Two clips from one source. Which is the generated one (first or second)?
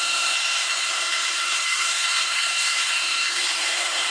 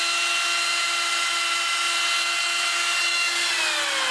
first